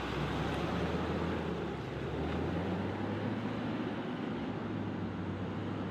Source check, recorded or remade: recorded